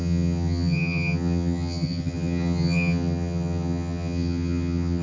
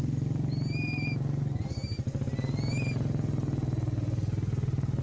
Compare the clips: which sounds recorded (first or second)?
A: second